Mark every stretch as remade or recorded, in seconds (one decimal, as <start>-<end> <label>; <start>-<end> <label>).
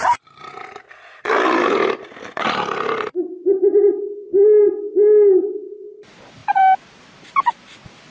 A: 0.0-8.1 recorded